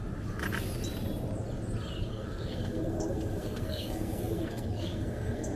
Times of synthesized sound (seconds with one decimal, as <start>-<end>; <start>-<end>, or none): 2.1-5.6